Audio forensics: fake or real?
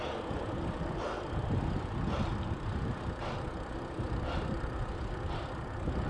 fake